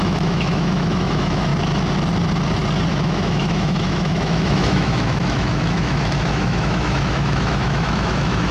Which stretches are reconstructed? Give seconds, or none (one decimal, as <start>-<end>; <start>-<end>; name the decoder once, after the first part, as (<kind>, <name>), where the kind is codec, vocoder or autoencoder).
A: 0.0-1.5 (autoencoder, DAC-VAE); 2.9-8.5